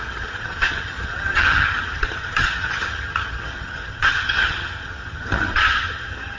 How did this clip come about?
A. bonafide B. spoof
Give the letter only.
B